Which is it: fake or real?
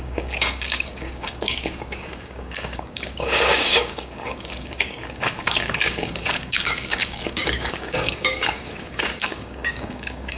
fake